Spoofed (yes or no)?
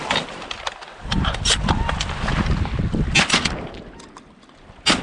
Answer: no